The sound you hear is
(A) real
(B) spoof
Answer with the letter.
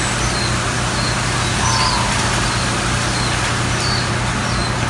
A